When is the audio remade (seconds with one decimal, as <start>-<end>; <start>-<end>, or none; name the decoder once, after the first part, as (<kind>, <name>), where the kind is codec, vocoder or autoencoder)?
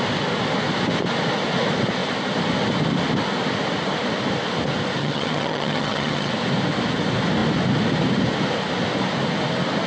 5.0-6.3 (vocoder, HiFi-GAN)